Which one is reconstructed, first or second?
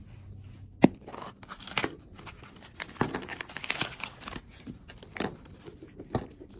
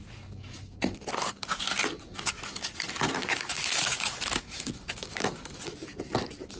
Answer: second